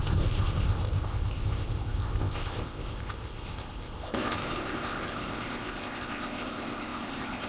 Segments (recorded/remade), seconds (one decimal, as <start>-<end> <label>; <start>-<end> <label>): 0.0-7.5 remade